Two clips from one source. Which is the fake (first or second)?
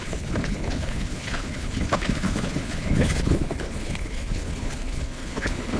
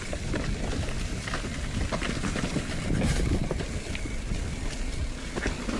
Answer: first